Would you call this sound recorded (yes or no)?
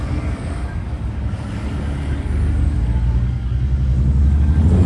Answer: no